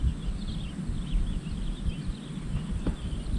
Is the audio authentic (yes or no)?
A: yes